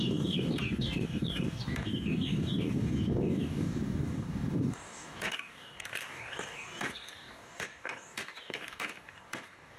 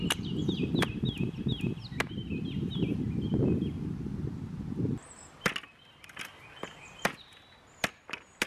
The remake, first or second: first